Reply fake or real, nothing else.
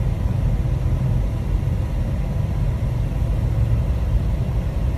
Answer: real